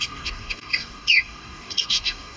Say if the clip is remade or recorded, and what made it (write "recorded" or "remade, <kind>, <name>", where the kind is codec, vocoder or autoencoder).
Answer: remade, codec, DAC